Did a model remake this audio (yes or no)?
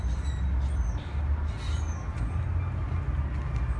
no